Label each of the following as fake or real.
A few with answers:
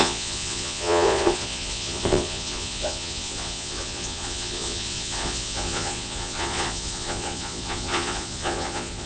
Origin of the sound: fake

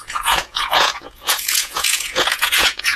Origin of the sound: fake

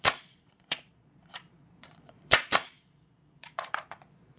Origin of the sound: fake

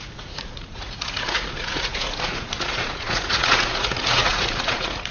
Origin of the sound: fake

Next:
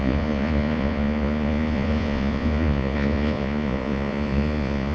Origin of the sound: fake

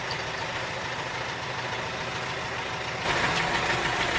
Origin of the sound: real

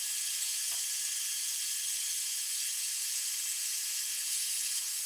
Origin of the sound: fake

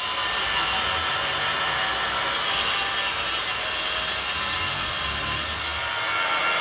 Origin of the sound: real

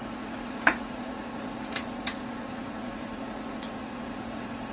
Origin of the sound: fake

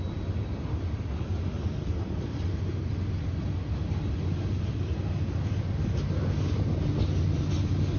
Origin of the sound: real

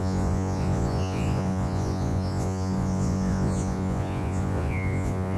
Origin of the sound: fake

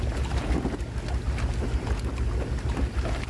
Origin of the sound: real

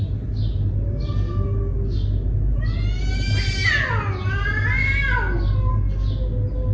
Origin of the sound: real